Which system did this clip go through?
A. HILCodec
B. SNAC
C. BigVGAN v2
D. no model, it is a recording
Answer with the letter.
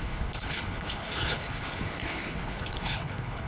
A